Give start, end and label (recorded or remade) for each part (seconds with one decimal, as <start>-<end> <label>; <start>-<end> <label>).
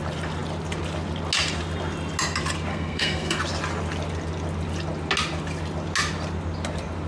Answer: 0.0-2.7 recorded; 2.7-3.4 remade; 3.4-7.1 recorded